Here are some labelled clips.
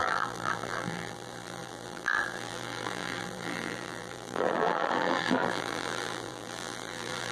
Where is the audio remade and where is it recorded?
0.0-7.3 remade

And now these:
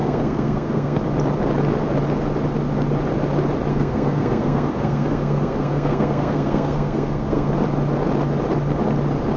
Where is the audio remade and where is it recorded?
0.0-1.0 remade; 1.0-3.7 recorded; 3.7-7.5 remade; 7.5-9.4 recorded

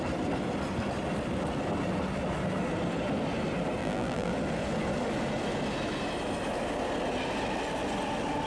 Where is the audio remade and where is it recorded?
0.0-3.8 recorded; 3.8-4.3 remade; 4.3-8.5 recorded

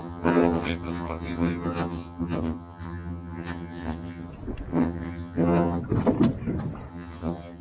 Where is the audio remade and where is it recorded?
0.0-4.3 remade; 4.3-4.7 recorded; 4.7-5.8 remade; 5.8-6.9 recorded; 6.9-7.6 remade

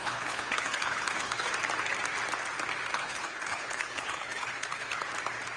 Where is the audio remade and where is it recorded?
0.0-1.5 remade; 1.5-2.9 recorded; 2.9-5.1 remade; 5.1-5.6 recorded

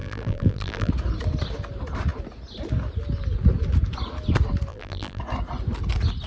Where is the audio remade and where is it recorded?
0.0-0.9 remade; 0.9-4.7 recorded; 4.7-5.2 remade; 5.2-6.3 recorded

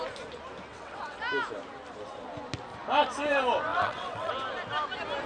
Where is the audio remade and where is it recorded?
0.0-0.7 recorded; 0.7-1.2 remade; 1.2-3.7 recorded; 3.7-4.3 remade; 4.3-5.3 recorded

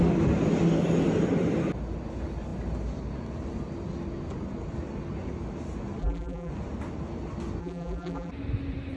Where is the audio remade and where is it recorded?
0.0-6.0 recorded; 6.0-6.5 remade; 6.5-7.6 recorded; 7.6-8.3 remade; 8.3-9.0 recorded